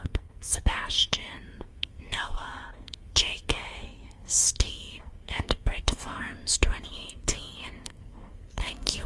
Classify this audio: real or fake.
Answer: fake